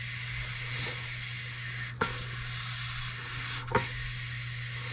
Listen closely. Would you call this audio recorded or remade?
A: recorded